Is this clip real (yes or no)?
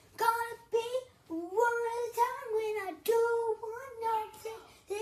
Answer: yes